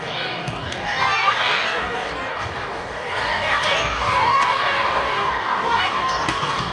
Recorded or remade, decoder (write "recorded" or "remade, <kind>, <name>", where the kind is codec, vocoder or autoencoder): remade, codec, DAC